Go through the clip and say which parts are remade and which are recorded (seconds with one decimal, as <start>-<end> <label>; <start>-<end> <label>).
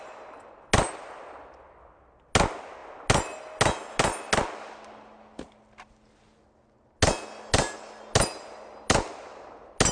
0.0-9.9 recorded